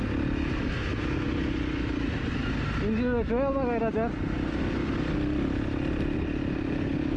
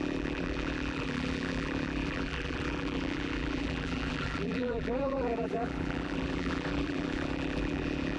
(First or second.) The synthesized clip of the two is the second